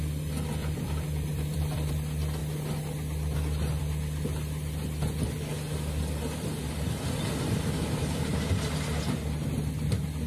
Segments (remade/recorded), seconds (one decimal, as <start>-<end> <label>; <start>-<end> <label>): 0.0-0.6 recorded; 0.6-1.9 remade; 1.9-10.3 recorded